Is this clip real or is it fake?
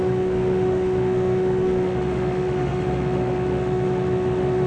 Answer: fake